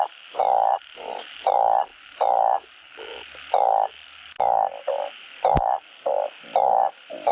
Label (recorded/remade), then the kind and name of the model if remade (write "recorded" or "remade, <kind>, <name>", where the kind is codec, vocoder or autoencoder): recorded